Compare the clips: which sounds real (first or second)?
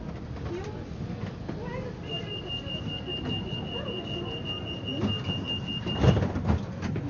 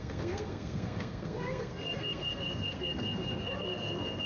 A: first